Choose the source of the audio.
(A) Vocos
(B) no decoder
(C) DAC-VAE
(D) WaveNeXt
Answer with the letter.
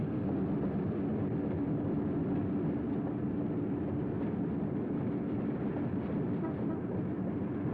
B